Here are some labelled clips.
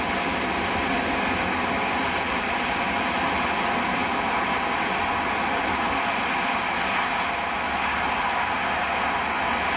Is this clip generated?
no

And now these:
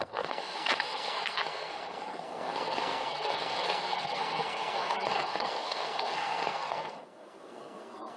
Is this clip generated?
yes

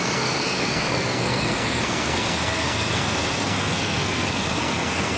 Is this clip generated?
yes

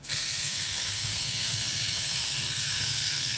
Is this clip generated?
yes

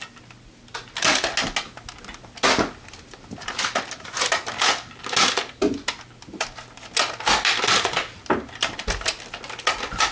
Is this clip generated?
no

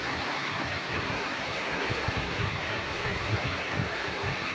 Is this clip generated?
yes